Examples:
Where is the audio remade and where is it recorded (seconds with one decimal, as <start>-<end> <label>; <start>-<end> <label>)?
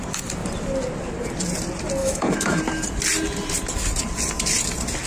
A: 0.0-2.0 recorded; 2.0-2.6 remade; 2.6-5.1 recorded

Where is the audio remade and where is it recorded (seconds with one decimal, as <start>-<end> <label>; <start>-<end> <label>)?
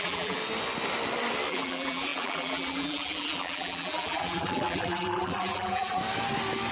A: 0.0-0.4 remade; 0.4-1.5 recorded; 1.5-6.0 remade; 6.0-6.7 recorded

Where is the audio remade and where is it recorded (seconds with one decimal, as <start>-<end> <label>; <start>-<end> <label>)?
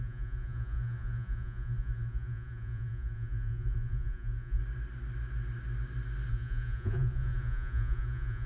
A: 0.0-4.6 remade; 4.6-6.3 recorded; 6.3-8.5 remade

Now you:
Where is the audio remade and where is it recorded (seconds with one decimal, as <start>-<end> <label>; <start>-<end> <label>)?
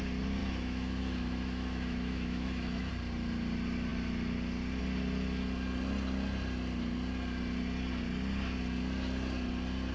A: 0.0-0.4 recorded; 0.4-2.9 remade; 2.9-9.9 recorded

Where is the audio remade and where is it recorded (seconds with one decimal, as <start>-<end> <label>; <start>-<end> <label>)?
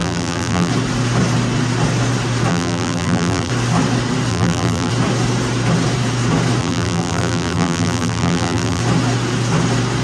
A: 0.0-0.7 remade; 0.7-2.5 recorded; 2.5-3.5 remade; 3.5-4.3 recorded; 4.3-4.9 remade; 4.9-6.6 recorded; 6.6-8.8 remade; 8.8-10.0 recorded